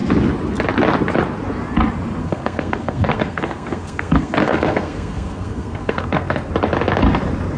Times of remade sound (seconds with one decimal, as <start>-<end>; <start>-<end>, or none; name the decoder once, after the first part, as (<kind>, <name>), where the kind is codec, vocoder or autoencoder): 2.2-6.5 (codec, SNAC)